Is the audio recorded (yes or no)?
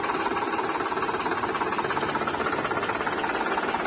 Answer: yes